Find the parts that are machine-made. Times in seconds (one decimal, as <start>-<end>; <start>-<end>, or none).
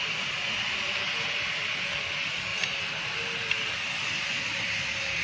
none